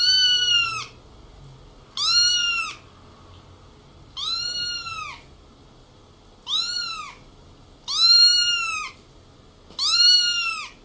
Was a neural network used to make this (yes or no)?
no